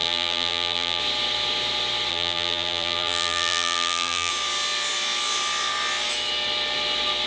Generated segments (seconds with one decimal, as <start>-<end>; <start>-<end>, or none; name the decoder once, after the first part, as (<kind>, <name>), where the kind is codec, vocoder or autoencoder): 0.0-1.0 (vocoder, BigVGAN v2); 2.1-4.3

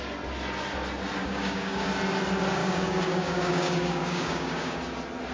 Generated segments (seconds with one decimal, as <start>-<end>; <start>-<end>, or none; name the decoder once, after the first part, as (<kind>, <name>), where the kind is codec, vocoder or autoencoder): 1.2-1.9 (codec, DAC); 2.6-4.8

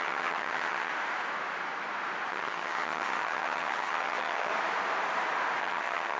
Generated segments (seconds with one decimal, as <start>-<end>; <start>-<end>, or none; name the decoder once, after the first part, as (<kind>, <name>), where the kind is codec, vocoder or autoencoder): 0.0-0.9 (vocoder, HiFi-GAN); 2.3-4.5; 5.6-6.2

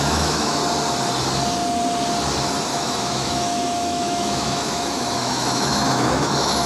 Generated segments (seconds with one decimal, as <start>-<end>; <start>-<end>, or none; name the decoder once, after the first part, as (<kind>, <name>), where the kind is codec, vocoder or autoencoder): 0.0-0.6 (autoencoder, DAC-VAE); 2.7-6.7

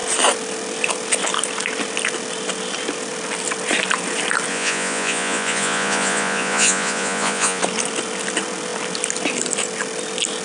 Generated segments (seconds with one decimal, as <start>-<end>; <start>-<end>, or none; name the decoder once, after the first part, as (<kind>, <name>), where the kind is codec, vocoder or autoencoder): 4.5-7.6 (vocoder, Vocos)

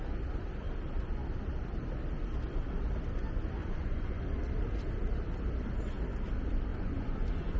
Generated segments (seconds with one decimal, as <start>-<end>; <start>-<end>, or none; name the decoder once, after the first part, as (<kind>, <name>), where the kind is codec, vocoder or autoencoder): 3.6-4.2 (vocoder, Vocos); 6.7-7.6

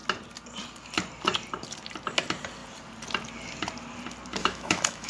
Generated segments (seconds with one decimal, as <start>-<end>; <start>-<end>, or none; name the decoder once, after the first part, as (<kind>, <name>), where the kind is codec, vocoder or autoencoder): 4.4-5.1 (autoencoder, DAC-VAE)